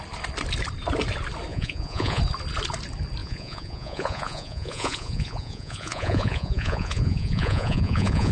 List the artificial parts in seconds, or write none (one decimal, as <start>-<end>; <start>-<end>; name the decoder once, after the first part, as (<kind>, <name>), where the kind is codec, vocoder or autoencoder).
1.5-2.2 (vocoder, Vocos); 3.2-8.3